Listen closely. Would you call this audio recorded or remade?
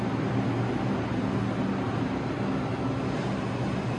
recorded